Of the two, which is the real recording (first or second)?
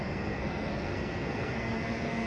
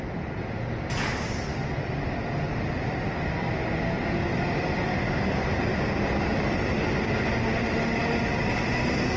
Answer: second